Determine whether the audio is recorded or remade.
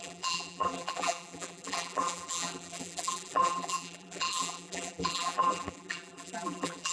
remade